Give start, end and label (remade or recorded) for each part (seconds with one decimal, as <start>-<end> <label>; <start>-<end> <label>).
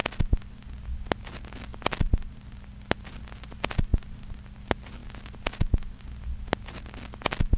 0.0-1.7 recorded; 1.7-2.3 remade; 2.3-3.9 recorded; 3.9-4.6 remade; 4.6-5.0 recorded; 5.0-6.0 remade; 6.0-7.6 recorded